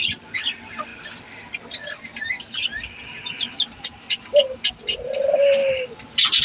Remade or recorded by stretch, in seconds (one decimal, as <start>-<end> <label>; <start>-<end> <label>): 0.0-0.9 remade; 0.9-4.7 recorded; 4.7-6.4 remade